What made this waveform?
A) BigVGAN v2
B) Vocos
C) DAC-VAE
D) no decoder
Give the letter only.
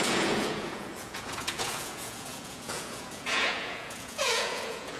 B